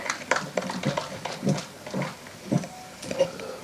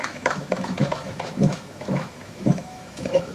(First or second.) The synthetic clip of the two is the second